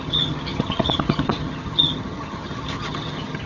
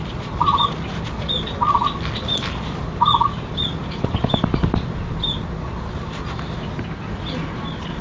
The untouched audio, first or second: second